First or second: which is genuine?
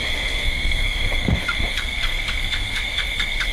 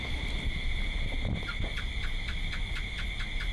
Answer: second